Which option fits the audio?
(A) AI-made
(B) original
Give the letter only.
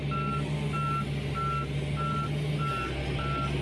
B